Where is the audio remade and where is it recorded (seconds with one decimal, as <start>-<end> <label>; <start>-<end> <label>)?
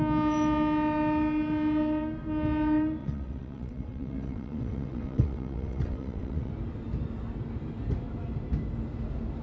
0.0-3.0 recorded; 3.0-6.5 remade; 6.5-9.4 recorded